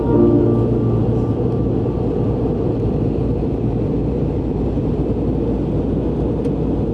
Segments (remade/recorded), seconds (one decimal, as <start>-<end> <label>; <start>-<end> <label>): 0.0-1.0 recorded; 1.0-5.1 remade; 5.1-6.9 recorded

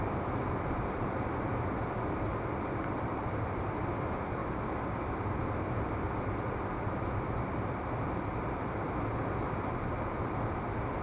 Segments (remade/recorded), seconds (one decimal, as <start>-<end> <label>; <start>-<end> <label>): 0.0-4.4 remade; 4.4-6.0 recorded; 6.0-11.0 remade

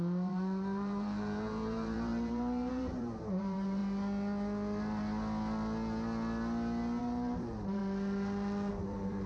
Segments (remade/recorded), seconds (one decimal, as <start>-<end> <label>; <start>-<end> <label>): 0.0-3.8 remade; 3.8-7.0 recorded; 7.0-7.8 remade; 7.8-8.7 recorded; 8.7-9.3 remade

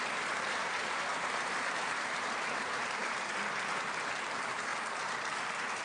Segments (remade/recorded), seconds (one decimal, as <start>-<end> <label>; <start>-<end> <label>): 0.0-1.1 recorded; 1.1-3.3 remade; 3.3-5.8 recorded

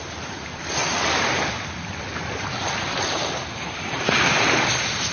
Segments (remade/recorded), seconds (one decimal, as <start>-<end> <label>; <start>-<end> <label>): 0.0-5.1 remade